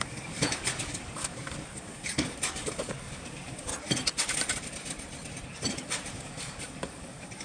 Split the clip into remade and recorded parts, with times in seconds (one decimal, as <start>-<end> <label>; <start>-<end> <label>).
0.0-3.7 remade; 3.7-6.1 recorded; 6.1-7.4 remade